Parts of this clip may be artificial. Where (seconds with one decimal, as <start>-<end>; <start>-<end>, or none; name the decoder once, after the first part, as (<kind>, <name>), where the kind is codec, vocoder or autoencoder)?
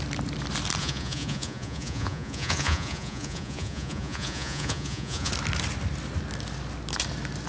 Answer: 0.8-5.3 (vocoder, Vocos)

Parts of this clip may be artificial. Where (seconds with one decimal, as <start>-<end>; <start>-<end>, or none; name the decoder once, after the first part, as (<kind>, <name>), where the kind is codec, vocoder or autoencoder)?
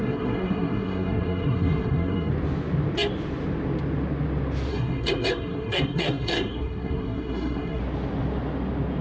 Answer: 0.0-2.3 (codec, SNAC); 4.7-7.8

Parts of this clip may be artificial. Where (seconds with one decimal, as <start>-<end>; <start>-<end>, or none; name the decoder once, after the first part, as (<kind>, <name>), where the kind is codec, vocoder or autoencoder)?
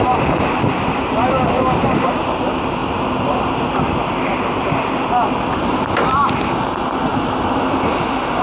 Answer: 7.1-8.0 (vocoder, BigVGAN v2)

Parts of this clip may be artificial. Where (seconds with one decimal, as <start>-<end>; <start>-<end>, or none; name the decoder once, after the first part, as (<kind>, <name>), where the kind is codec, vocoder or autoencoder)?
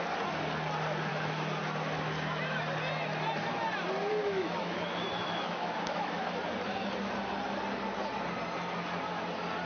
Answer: 1.1-1.6 (autoencoder, DAC-VAE); 4.2-6.2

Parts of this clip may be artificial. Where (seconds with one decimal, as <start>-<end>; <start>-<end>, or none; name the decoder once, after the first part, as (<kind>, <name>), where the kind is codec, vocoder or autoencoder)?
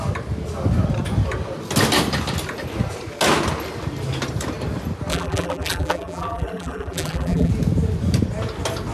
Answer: 5.1-7.5 (vocoder, BigVGAN v2)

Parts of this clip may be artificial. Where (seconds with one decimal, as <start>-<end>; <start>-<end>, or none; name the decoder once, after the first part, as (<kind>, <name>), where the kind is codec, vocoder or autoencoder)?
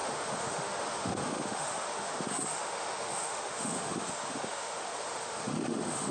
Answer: 0.0-6.1 (autoencoder, DAC-VAE)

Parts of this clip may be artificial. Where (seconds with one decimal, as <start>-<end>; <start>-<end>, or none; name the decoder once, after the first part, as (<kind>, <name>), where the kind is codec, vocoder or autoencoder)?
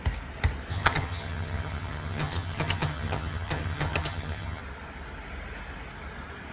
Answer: 0.7-4.6 (vocoder, HiFi-GAN)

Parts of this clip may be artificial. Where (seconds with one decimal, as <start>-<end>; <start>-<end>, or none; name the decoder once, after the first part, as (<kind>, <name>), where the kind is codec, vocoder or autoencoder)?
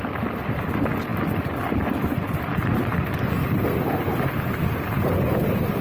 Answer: none